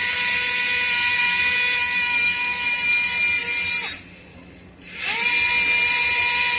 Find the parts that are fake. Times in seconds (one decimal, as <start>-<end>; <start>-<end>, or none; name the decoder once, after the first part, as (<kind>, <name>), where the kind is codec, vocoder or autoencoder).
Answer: none